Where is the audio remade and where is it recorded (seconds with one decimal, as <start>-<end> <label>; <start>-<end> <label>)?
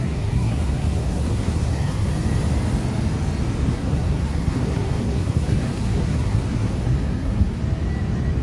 0.0-2.1 remade; 2.1-3.7 recorded; 3.7-7.6 remade; 7.6-8.4 recorded